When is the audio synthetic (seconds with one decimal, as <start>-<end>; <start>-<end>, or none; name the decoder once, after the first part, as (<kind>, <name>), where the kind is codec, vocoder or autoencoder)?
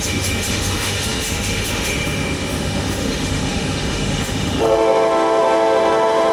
0.0-6.3 (autoencoder, DAC-VAE)